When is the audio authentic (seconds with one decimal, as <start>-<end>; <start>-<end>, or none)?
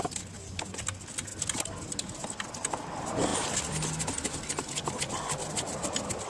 0.0-6.3